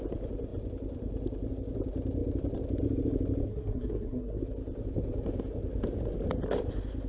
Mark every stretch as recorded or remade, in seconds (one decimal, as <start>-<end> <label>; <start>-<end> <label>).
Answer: 0.0-3.5 recorded; 3.5-4.4 remade; 4.4-7.1 recorded